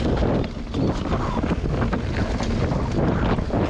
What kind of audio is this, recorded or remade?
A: recorded